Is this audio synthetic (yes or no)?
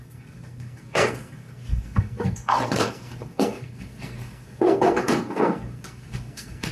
yes